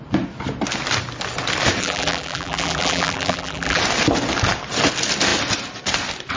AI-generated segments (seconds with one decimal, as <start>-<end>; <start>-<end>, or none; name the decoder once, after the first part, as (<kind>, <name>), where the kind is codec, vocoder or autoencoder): 1.8-3.8 (vocoder, BigVGAN v2)